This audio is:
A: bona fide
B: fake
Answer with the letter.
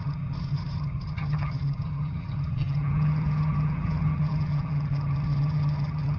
B